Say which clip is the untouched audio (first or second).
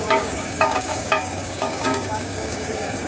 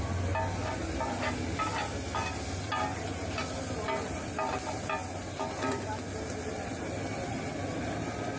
second